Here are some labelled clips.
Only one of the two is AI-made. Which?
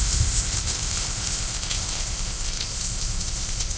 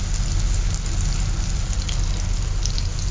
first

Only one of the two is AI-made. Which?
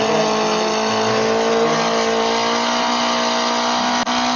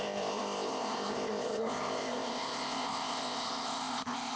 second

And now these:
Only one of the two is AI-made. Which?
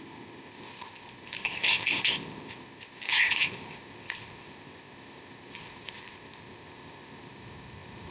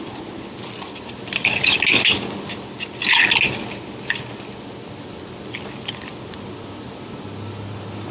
first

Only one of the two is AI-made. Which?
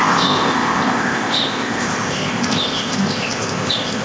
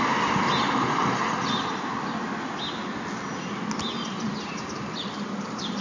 first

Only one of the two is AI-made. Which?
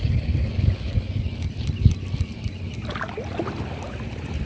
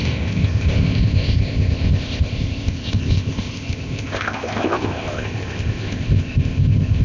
second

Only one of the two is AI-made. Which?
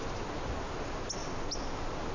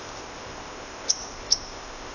second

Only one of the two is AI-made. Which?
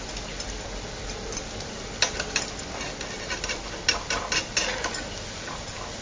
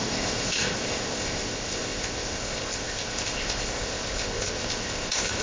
second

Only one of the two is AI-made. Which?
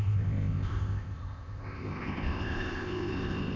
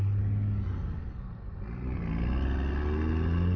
first